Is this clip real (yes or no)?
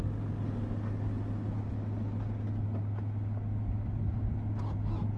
yes